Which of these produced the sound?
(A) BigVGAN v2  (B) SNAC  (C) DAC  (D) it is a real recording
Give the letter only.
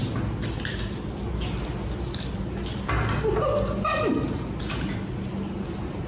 D